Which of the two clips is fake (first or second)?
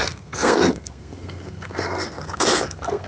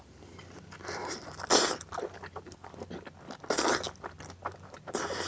first